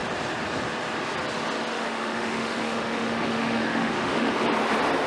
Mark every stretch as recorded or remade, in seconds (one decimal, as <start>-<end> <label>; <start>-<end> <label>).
0.0-1.7 recorded; 1.7-4.3 remade; 4.3-5.1 recorded